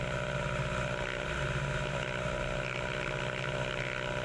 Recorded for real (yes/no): yes